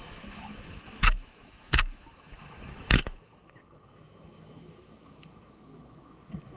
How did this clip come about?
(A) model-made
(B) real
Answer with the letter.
A